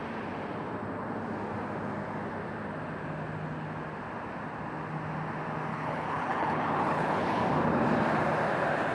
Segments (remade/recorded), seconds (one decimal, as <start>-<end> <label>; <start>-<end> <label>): 0.0-5.7 recorded; 5.7-7.4 remade; 7.4-8.9 recorded